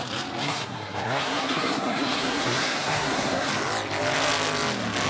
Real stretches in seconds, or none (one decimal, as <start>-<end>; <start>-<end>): 0.0-0.4; 3.5-5.1